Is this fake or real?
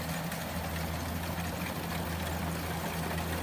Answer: real